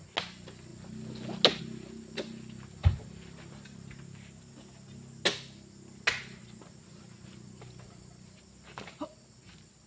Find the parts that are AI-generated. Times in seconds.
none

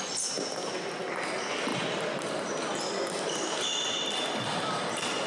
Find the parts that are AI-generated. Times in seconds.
1.7-5.3 (vocoder, BigVGAN v2)

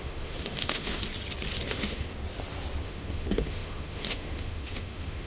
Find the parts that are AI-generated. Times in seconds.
0.0-1.0 (autoencoder, DAC-VAE); 1.7-2.1; 2.8-5.3

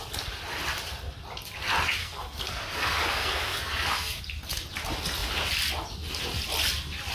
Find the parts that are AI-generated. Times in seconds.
2.0-4.2 (codec, SNAC)